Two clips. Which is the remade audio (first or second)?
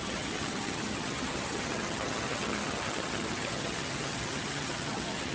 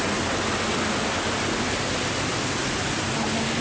first